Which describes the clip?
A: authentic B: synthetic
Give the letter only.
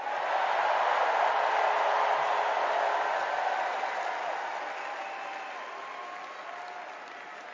A